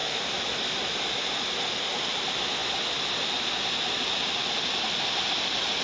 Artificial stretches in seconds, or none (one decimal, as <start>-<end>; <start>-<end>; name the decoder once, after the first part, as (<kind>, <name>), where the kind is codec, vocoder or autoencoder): none